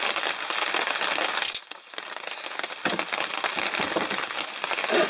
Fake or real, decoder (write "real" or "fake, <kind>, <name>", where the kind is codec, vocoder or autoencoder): real